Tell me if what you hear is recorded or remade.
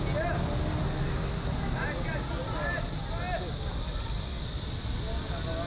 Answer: recorded